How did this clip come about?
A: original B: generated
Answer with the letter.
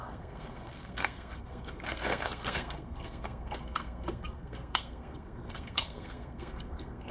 B